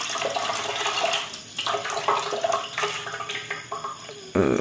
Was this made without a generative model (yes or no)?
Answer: yes